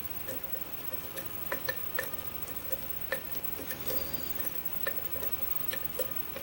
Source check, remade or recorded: remade